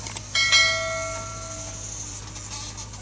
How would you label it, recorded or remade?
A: recorded